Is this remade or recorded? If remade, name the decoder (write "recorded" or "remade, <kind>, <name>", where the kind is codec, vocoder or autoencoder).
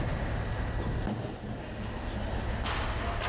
recorded